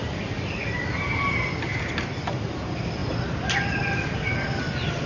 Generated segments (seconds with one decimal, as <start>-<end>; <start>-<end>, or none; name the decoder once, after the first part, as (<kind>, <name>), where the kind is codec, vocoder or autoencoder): 0.0-3.0 (vocoder, BigVGAN v2); 3.5-5.1